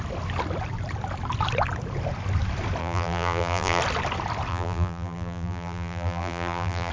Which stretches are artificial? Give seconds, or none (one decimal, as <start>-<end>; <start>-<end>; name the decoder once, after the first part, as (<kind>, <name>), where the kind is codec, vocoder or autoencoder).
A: 2.8-3.8 (vocoder, BigVGAN v2); 4.5-6.9